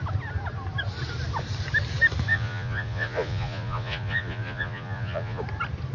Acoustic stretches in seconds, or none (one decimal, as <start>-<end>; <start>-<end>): 0.0-2.3; 5.4-5.9